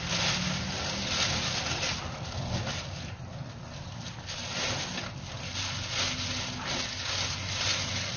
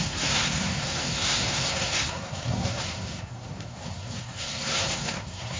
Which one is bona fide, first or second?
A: first